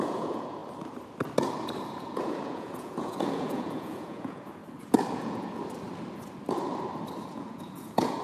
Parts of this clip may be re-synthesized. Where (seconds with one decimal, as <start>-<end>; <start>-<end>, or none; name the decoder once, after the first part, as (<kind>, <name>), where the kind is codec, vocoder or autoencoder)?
0.0-0.6 (vocoder, Vocos); 1.9-4.6; 5.1-5.6; 7.3-8.2

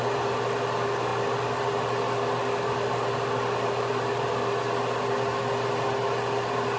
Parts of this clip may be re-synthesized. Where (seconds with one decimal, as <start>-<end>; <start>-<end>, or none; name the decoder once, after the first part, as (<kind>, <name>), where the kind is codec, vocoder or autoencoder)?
none

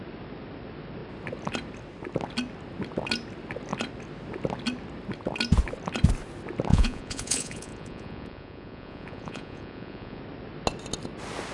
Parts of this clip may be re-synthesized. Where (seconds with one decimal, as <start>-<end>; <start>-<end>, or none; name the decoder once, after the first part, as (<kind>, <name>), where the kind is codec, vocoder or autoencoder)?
6.7-10.2 (vocoder, Vocos)